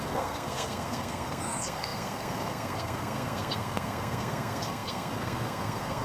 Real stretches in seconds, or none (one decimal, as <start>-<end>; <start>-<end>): none

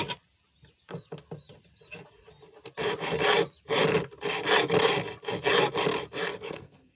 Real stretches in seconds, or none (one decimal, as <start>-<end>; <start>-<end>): 0.0-6.3

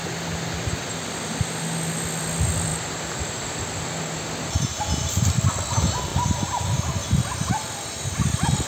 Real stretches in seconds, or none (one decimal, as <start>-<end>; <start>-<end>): 0.0-8.7

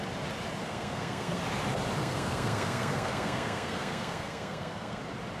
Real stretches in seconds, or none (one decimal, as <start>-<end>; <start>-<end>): 0.0-0.6; 1.4-2.0; 5.0-5.4